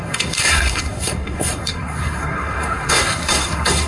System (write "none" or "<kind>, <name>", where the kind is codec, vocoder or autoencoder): codec, SNAC